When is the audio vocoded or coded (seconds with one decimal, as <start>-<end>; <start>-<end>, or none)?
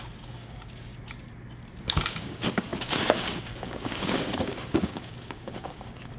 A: 0.0-0.9; 1.8-6.2